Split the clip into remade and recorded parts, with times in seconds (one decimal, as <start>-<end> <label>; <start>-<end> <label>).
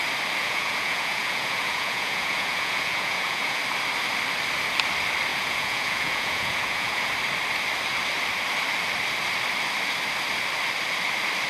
0.0-0.4 recorded; 0.4-3.6 remade; 3.6-5.3 recorded; 5.3-7.1 remade; 7.1-11.5 recorded